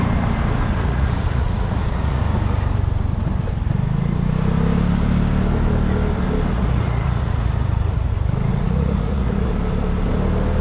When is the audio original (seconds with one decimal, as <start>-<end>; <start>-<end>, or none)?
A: 0.0-0.7; 2.2-6.5; 8.1-8.5; 9.5-10.6